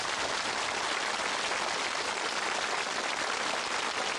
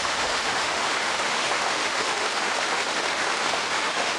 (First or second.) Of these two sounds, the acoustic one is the first